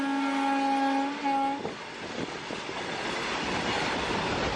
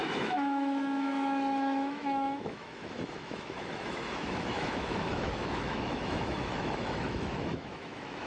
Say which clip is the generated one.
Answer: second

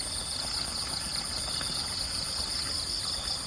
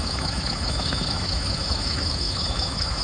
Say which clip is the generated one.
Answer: second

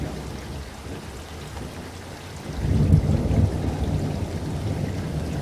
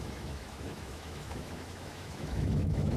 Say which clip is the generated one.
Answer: second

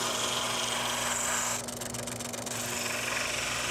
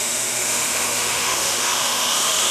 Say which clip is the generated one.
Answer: second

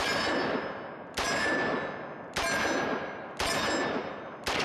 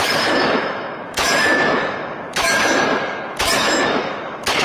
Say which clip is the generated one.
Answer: second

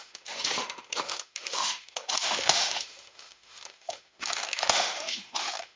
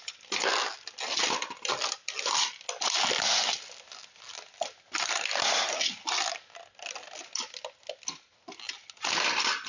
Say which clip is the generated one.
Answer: first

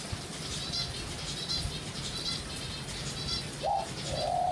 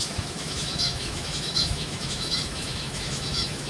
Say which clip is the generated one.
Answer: second